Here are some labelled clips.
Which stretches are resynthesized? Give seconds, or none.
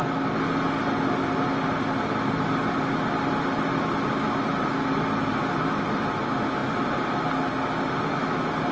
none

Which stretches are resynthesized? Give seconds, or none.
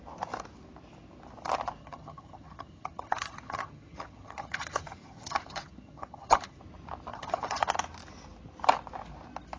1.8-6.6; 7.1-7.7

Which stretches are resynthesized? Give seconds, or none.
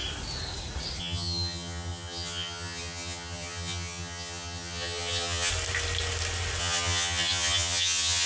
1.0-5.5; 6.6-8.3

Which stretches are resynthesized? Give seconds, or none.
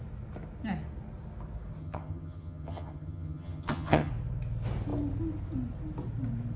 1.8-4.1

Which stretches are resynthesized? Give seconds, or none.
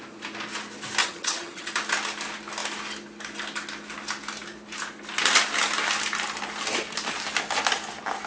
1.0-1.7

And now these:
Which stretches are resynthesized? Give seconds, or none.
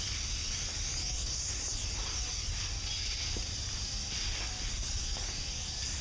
none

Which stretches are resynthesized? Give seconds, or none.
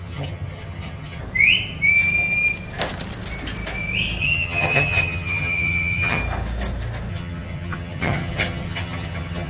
0.0-1.2; 4.2-6.2; 7.1-9.5